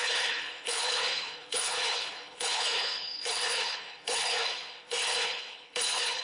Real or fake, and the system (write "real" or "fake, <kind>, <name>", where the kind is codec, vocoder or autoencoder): fake, codec, HILCodec